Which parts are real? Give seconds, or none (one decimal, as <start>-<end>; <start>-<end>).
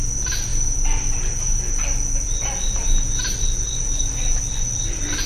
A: 0.0-5.3